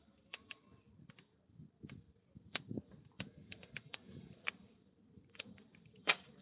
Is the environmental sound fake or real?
fake